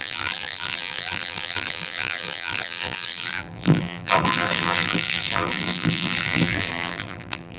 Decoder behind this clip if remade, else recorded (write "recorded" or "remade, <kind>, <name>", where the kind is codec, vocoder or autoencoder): remade, vocoder, BigVGAN v2